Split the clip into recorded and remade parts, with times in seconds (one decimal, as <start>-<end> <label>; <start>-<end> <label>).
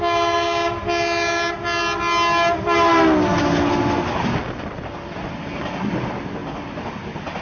0.0-7.4 recorded